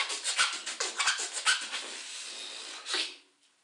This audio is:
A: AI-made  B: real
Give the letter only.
B